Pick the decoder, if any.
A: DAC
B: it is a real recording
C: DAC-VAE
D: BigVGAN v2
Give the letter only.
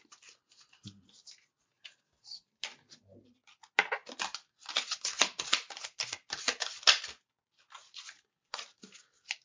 B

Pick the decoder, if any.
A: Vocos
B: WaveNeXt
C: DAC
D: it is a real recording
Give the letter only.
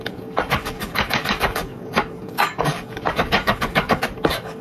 C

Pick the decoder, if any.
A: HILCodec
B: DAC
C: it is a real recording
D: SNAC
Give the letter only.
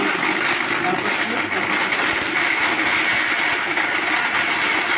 C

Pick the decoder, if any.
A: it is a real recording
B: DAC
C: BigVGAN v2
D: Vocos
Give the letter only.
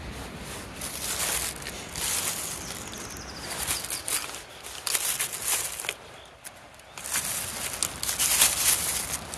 A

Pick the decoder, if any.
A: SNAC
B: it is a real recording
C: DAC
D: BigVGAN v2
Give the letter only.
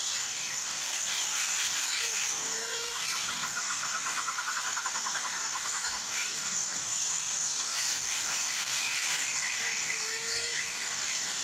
C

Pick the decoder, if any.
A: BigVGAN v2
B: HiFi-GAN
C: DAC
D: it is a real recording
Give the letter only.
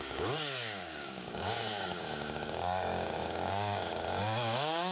C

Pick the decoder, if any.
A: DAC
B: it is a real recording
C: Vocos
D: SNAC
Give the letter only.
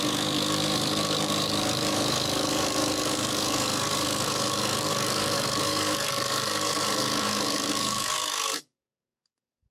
A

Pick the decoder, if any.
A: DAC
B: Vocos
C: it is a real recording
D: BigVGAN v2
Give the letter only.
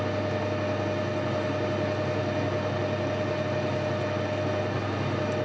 C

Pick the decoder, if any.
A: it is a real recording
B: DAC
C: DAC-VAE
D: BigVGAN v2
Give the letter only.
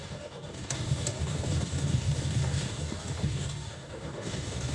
B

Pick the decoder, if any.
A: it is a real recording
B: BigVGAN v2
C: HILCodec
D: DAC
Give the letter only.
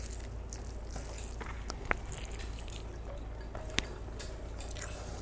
A